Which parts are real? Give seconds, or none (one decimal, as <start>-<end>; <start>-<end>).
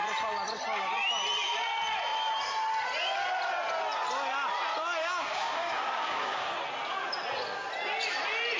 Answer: 0.0-5.0; 6.5-8.6